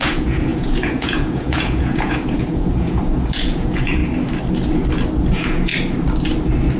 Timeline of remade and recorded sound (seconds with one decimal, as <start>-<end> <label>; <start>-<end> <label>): 0.0-4.0 remade; 4.0-5.3 recorded; 5.3-5.7 remade; 5.7-6.8 recorded